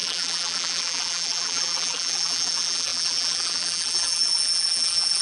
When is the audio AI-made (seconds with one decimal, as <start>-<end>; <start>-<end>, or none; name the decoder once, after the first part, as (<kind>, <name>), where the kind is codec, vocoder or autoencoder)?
0.0-5.2 (vocoder, BigVGAN v2)